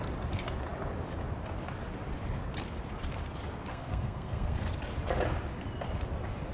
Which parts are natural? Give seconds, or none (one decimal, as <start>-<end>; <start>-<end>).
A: 0.0-3.7; 4.6-6.5